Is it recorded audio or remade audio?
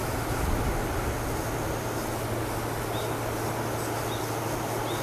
recorded